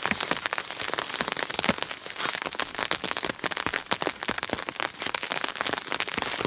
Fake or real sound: real